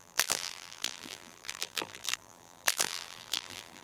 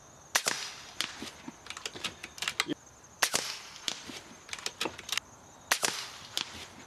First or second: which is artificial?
first